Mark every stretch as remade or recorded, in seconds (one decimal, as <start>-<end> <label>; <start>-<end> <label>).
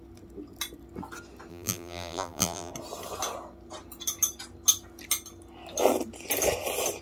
0.0-1.5 recorded; 1.5-2.7 remade; 2.7-7.0 recorded